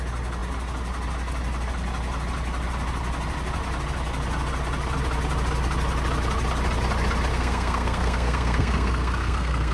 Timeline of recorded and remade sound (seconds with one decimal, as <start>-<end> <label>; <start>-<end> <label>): 0.0-7.3 recorded; 7.3-9.7 remade